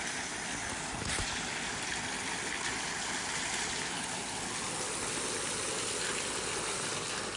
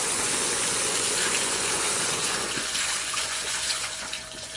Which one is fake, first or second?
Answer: second